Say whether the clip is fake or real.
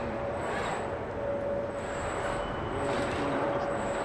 real